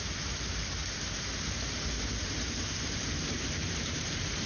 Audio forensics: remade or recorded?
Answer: remade